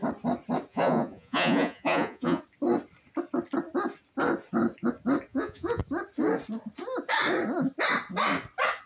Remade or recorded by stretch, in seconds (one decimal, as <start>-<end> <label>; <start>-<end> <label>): 0.0-0.7 recorded; 0.7-2.4 remade; 2.4-5.3 recorded; 5.3-5.8 remade; 5.8-8.9 recorded

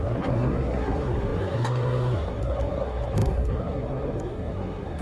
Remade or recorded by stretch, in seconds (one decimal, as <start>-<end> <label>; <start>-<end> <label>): 0.0-5.0 remade

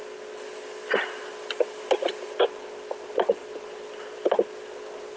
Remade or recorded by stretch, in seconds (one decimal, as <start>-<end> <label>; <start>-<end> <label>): 0.0-5.2 recorded

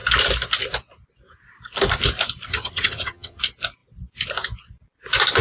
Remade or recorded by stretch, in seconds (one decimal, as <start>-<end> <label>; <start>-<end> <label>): 0.0-2.5 recorded; 2.5-3.4 remade; 3.4-5.4 recorded

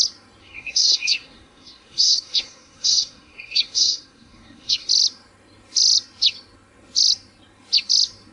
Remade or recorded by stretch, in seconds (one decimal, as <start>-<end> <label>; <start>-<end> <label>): 0.0-0.4 recorded; 0.4-4.9 remade; 4.9-8.3 recorded

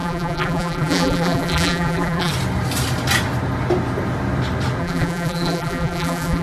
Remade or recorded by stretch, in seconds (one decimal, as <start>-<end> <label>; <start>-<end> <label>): 0.0-2.3 remade; 2.3-4.8 recorded; 4.8-6.4 remade

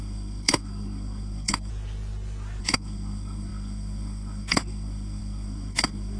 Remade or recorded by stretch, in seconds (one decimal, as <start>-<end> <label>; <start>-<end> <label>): 0.0-1.7 remade; 1.7-2.6 recorded; 2.6-6.2 remade